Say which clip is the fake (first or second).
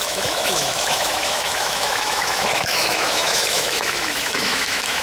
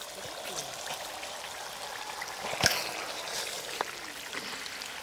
first